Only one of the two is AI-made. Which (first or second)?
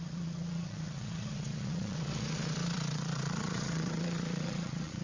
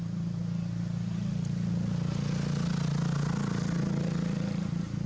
first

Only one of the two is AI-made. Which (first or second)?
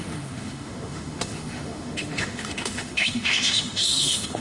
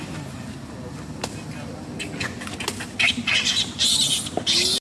first